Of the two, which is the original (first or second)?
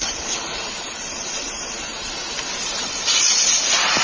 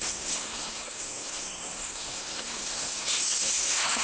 first